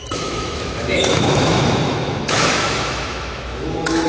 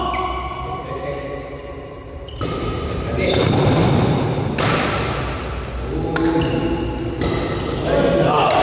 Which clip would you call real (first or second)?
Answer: second